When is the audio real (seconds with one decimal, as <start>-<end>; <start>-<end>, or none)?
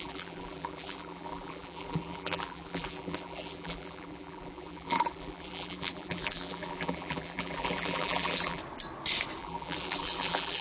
8.6-9.4